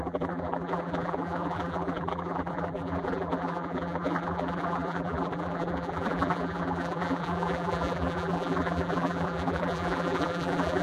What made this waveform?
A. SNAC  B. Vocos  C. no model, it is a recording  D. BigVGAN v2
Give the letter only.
D